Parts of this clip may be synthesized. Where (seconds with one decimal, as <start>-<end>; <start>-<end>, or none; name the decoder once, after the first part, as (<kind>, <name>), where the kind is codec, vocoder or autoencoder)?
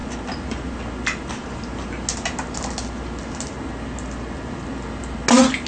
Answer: none